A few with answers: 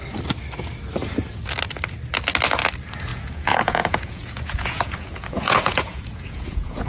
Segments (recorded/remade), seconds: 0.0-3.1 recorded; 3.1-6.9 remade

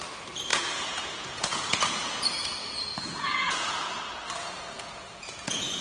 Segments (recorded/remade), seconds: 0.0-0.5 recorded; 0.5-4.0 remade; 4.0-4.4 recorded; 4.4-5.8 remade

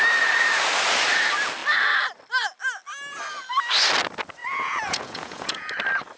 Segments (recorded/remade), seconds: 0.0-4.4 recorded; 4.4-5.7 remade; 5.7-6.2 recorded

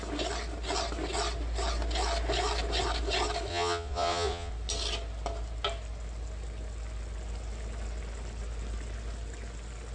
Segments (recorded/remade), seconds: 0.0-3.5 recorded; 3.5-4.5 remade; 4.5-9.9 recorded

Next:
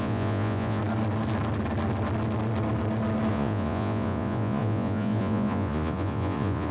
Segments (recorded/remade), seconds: 0.0-0.8 remade; 0.8-3.3 recorded; 3.3-6.7 remade

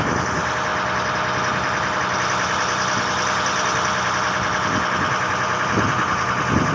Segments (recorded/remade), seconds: 0.0-6.7 recorded

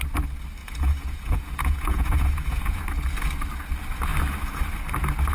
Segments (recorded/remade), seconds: 0.0-0.6 recorded; 0.6-2.8 remade; 2.8-5.3 recorded

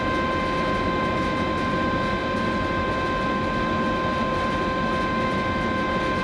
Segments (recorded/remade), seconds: 0.0-6.2 recorded